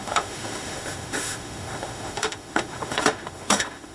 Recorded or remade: remade